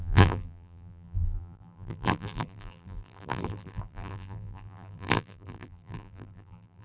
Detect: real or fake fake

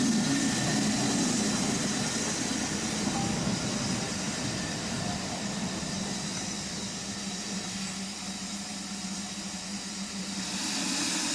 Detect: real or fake real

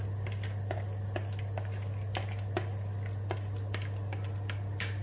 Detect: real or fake real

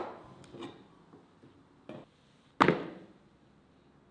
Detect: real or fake real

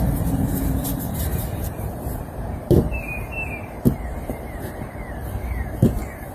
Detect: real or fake fake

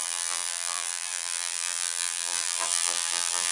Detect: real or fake fake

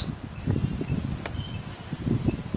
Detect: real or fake real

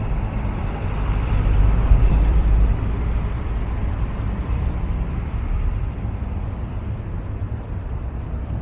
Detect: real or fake fake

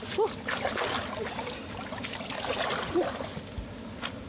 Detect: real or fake real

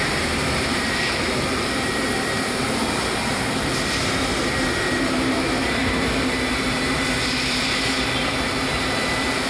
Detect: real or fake fake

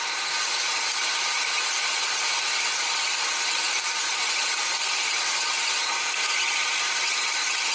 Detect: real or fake real